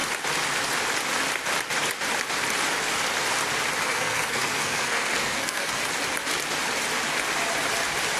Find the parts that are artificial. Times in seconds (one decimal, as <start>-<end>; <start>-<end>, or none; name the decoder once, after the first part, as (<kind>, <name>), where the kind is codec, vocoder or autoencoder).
3.9-5.8 (codec, SNAC)